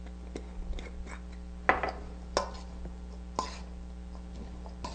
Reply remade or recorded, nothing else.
recorded